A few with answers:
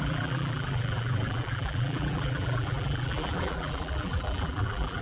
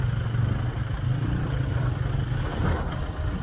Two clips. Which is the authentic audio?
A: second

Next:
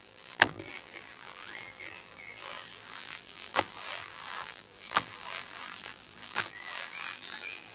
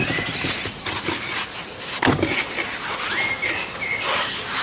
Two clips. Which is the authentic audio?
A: second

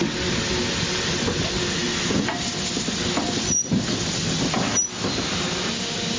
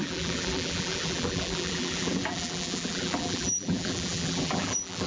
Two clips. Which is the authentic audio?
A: first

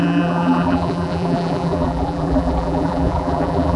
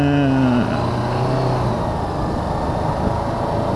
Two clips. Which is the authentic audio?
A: second